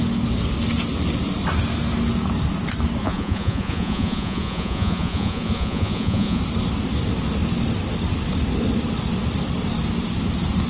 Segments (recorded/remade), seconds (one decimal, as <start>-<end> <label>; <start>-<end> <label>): 0.0-3.0 recorded; 3.0-6.4 remade; 6.4-10.7 recorded